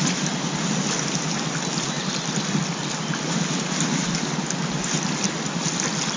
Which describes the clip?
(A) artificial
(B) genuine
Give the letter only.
B